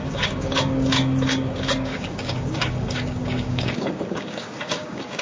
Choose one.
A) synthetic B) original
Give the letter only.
A